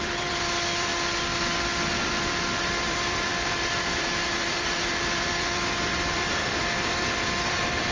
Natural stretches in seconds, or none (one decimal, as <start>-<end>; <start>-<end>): 0.9-2.9